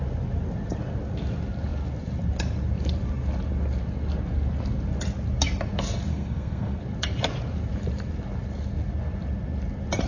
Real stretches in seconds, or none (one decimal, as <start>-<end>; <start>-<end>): 0.0-6.1; 6.8-10.1

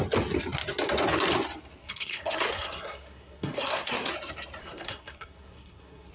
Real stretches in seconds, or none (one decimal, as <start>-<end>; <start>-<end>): 0.0-1.8; 4.1-4.6